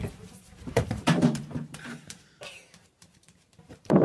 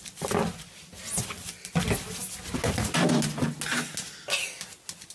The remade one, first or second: first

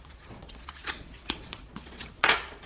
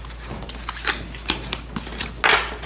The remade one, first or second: first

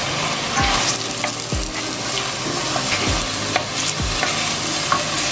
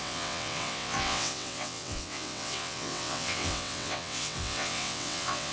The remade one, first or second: second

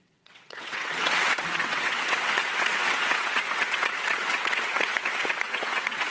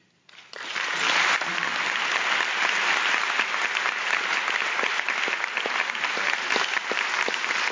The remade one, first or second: first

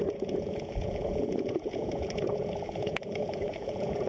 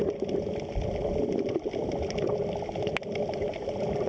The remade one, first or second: first